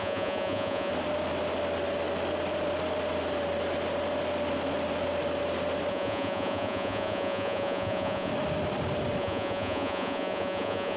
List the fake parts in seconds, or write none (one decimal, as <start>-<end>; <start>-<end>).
0.0-0.9; 5.9-8.3; 9.2-11.0